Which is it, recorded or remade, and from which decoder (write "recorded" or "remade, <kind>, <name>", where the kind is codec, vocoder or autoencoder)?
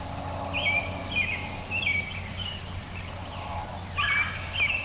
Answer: recorded